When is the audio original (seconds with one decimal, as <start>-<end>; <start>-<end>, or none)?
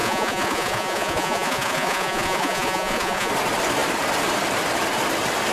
3.3-5.5